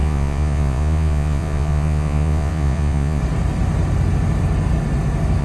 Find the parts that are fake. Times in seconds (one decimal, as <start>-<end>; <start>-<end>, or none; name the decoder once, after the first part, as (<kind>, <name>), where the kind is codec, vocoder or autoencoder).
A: 0.0-3.2 (vocoder, Vocos)